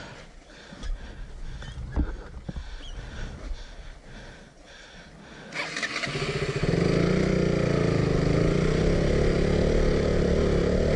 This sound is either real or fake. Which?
real